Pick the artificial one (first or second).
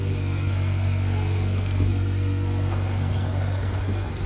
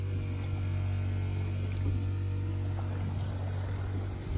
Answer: first